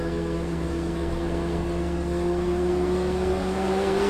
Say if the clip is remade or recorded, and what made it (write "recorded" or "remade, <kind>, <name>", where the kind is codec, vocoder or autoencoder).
remade, codec, SNAC